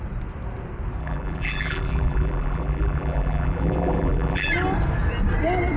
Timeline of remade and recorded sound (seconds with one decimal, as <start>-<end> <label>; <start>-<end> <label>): 0.0-1.0 recorded; 1.0-4.5 remade; 4.5-5.8 recorded